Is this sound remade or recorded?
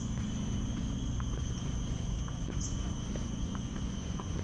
remade